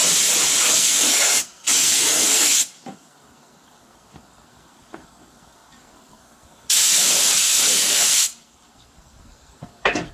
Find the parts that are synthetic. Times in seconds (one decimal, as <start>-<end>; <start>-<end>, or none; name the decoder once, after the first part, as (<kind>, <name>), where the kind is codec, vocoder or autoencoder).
0.7-10.1 (codec, SNAC)